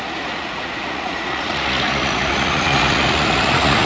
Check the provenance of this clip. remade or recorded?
remade